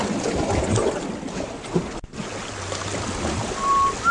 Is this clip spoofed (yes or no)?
no